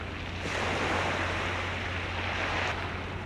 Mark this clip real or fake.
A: real